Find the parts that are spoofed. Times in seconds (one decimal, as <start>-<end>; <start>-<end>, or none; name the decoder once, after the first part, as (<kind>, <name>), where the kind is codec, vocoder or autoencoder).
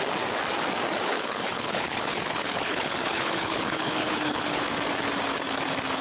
1.1-4.6 (codec, HILCodec)